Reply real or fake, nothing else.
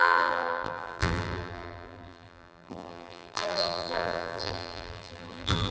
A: fake